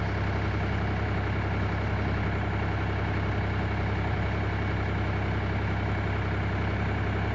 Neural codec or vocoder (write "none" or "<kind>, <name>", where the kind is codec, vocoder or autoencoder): none